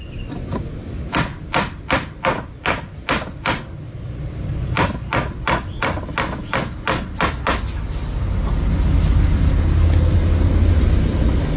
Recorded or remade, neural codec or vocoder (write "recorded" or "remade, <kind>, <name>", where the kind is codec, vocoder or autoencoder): recorded